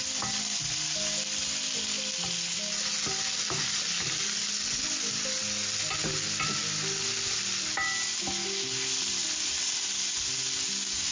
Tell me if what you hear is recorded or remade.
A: recorded